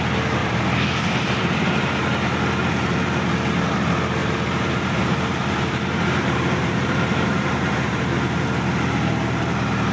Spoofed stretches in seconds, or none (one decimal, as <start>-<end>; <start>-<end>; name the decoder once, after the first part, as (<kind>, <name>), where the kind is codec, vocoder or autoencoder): 0.4-2.1 (vocoder, BigVGAN v2); 4.2-8.4